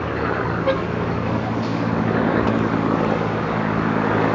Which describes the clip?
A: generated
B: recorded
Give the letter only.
A